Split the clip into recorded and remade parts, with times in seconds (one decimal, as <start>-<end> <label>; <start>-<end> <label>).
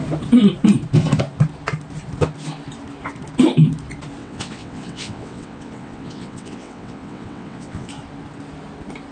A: 0.0-4.2 recorded; 4.2-7.9 remade; 7.9-9.1 recorded